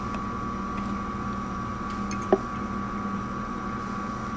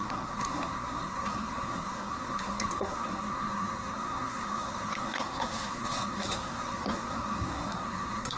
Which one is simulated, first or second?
second